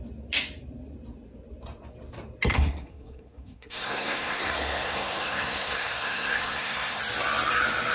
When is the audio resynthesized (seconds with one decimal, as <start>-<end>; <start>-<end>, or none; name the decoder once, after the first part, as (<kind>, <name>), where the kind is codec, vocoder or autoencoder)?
2.5-7.0 (codec, SNAC)